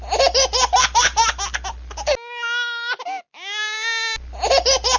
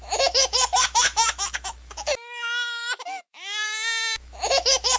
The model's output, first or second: second